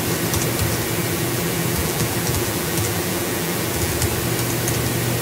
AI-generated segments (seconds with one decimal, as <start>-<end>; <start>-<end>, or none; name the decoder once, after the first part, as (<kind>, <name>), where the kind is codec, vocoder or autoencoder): 1.0-4.0 (vocoder, BigVGAN v2)